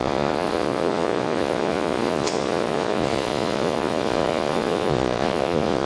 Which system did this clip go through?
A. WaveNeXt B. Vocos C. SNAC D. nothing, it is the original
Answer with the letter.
B